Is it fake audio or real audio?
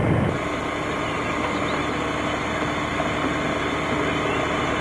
real